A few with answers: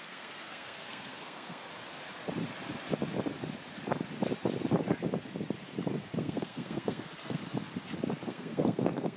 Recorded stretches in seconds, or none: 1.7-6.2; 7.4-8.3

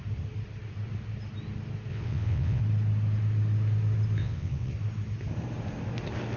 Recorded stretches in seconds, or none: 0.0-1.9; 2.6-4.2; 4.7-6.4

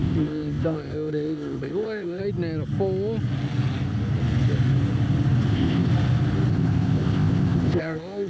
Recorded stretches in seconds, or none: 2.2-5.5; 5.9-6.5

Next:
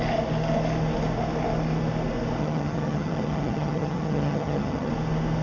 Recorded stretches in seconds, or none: 0.0-2.4; 4.9-5.4

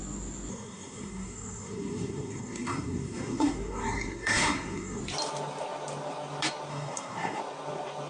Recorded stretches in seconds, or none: 0.0-0.5; 5.0-6.7; 7.4-8.1